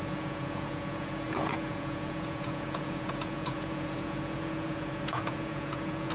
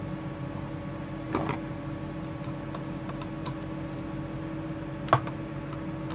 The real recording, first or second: second